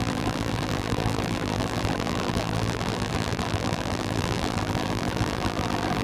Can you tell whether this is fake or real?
fake